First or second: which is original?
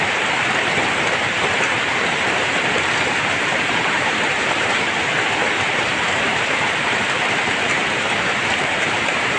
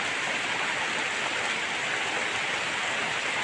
second